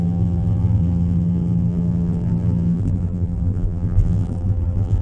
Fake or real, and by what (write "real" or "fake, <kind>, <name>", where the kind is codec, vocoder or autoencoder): fake, vocoder, BigVGAN v2